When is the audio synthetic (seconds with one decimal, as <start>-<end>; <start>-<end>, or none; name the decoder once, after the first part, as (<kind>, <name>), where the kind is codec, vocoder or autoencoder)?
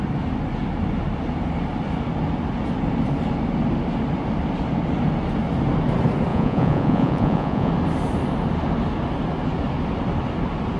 6.3-7.7 (vocoder, Vocos)